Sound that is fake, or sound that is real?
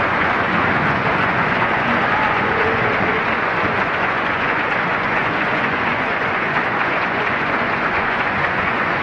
fake